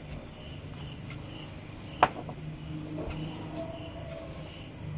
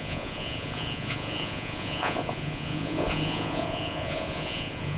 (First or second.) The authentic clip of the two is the first